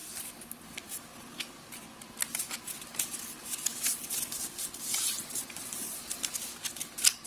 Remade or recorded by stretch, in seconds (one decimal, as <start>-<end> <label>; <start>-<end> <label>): 0.0-7.3 recorded